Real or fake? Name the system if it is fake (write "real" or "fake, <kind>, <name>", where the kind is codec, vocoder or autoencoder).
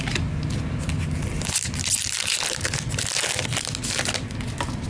real